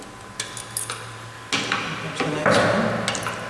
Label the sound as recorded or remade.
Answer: recorded